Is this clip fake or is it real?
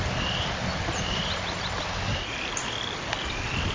real